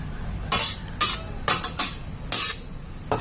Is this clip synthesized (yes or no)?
no